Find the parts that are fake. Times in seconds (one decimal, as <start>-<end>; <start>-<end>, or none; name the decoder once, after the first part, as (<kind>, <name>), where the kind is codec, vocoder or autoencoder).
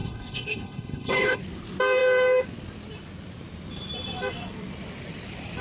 0.0-1.4 (codec, HILCodec)